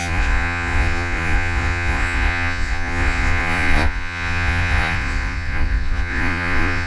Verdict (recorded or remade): remade